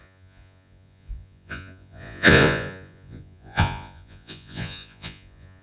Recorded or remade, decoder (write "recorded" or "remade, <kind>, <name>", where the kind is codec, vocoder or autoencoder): remade, vocoder, Vocos